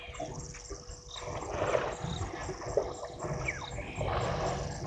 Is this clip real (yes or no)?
yes